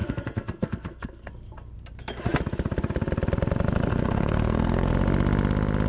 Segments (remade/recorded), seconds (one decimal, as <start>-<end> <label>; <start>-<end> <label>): 0.0-1.3 remade; 1.3-3.9 recorded; 3.9-4.9 remade; 4.9-5.9 recorded